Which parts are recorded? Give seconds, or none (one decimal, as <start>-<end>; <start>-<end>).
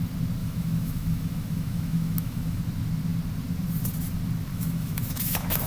0.0-0.4; 2.6-4.5